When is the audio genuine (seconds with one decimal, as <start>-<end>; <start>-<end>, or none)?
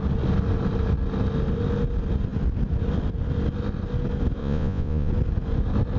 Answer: 0.0-4.4; 5.1-6.0